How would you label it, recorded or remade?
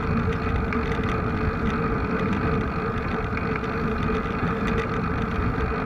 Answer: recorded